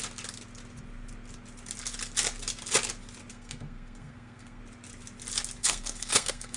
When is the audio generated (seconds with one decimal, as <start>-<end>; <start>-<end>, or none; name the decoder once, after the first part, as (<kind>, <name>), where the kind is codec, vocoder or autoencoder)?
3.3-4.6 (codec, SNAC); 5.6-6.6